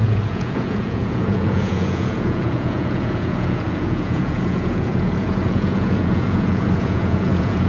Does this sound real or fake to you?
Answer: fake